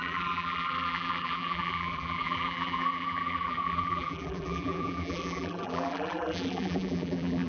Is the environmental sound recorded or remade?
remade